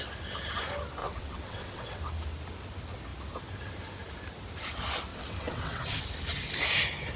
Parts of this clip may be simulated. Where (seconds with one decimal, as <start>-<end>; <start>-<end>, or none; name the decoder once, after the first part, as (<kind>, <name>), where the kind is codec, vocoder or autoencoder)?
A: 1.0-2.0 (vocoder, WaveNeXt); 5.1-6.0